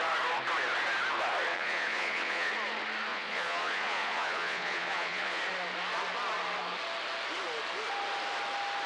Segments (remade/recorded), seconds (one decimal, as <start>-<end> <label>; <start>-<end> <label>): 0.0-1.5 recorded; 1.5-2.5 remade; 2.5-3.1 recorded; 3.1-5.4 remade; 5.4-8.9 recorded